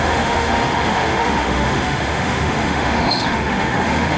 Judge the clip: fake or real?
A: fake